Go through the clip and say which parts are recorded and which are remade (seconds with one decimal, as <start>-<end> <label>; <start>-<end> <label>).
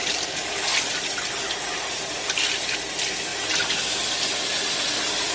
0.0-3.3 recorded; 3.3-4.2 remade; 4.2-5.3 recorded